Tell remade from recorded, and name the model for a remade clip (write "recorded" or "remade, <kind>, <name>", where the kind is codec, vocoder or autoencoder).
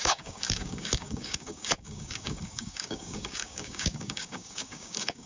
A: remade, codec, DAC